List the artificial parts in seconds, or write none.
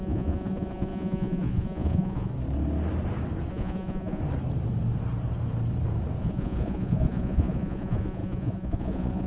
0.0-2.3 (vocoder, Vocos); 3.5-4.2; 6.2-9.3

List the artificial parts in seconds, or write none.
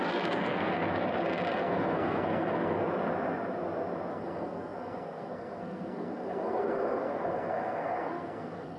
0.0-0.8 (codec, SNAC); 1.6-2.8; 4.1-8.8